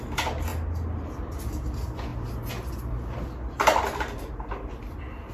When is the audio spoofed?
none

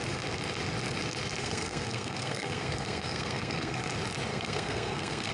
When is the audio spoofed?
1.4-3.8 (codec, SNAC); 4.3-5.3

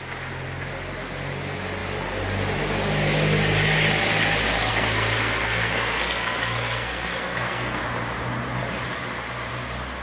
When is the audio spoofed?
4.7-7.8 (codec, SNAC)